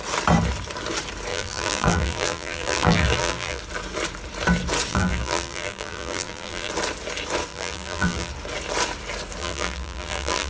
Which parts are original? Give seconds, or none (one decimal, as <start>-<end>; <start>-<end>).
0.0-1.3; 3.6-4.9; 6.7-7.5; 8.3-9.4